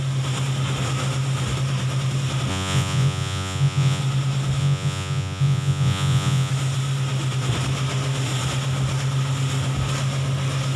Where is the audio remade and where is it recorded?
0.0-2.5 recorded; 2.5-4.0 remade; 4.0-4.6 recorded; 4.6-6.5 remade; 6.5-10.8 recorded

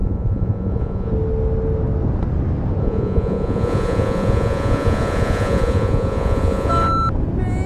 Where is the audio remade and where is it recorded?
0.0-1.1 remade; 1.1-2.8 recorded; 2.8-6.7 remade; 6.7-7.7 recorded

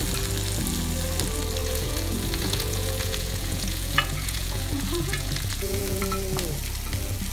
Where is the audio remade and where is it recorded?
0.0-1.6 recorded; 1.6-6.0 remade; 6.0-7.3 recorded

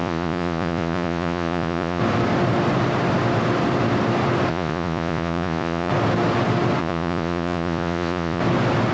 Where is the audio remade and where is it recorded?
0.0-2.0 remade; 2.0-4.5 recorded; 4.5-5.9 remade; 5.9-6.8 recorded; 6.8-8.4 remade; 8.4-8.9 recorded

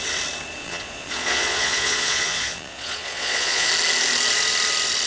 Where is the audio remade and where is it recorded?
0.0-0.6 recorded; 0.6-3.7 remade; 3.7-5.1 recorded

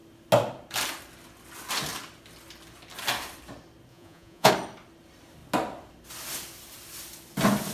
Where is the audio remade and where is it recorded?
0.0-3.9 recorded; 3.9-4.5 remade; 4.5-7.7 recorded

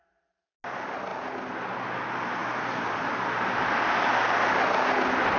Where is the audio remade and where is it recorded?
0.0-5.4 recorded

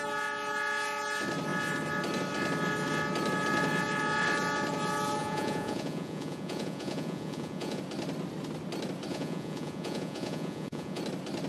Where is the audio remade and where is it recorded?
0.0-5.2 recorded; 5.2-7.8 remade; 7.8-9.1 recorded; 9.1-11.0 remade; 11.0-11.5 recorded